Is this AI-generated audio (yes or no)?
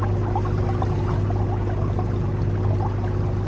no